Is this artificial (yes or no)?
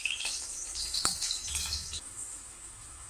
yes